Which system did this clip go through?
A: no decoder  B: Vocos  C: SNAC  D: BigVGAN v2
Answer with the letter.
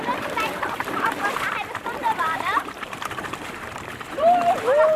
D